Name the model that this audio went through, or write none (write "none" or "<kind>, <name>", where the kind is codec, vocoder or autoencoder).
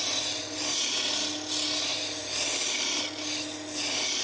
none